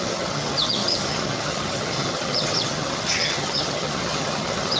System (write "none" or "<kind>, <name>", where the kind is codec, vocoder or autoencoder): vocoder, HiFi-GAN